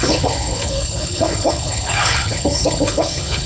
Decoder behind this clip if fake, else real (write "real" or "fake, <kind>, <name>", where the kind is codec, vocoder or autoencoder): fake, codec, HILCodec